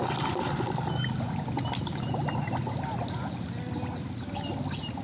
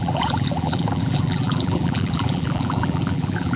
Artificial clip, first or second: second